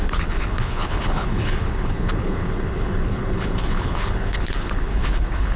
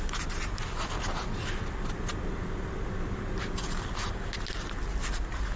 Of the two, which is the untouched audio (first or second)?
second